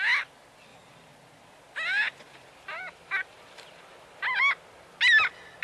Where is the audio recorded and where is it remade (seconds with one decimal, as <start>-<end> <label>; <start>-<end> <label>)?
0.0-5.6 recorded